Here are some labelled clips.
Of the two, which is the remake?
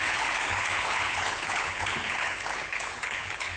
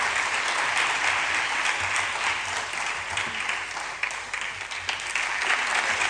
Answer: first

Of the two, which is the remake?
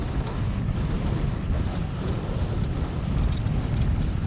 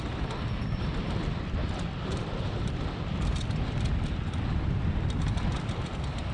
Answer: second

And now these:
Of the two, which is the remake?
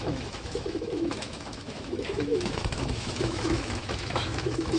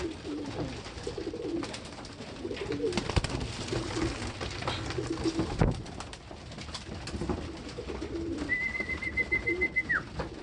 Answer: first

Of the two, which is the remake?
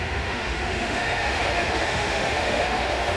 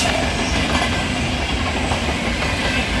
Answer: first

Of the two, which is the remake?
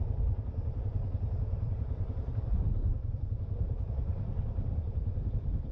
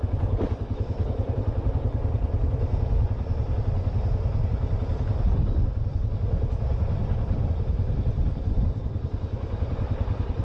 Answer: first